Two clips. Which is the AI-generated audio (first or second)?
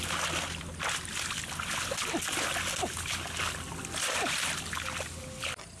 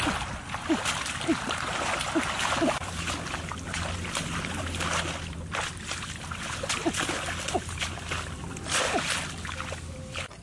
second